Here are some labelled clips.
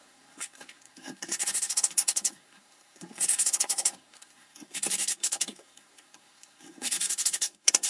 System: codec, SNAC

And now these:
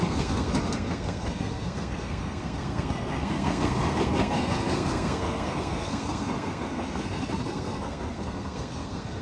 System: codec, SNAC